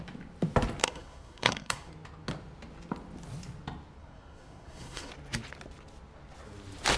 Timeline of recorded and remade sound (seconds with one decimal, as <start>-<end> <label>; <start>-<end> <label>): 0.0-0.8 recorded; 0.8-1.9 remade; 1.9-4.0 recorded; 4.0-5.1 remade; 5.1-7.0 recorded